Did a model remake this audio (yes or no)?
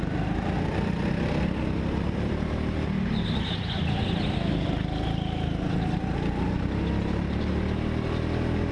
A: no